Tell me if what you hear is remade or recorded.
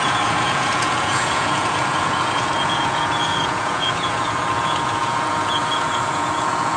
remade